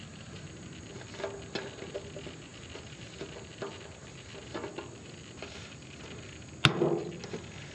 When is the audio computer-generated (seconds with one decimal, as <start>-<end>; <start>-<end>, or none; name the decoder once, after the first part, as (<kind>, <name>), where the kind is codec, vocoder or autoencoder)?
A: none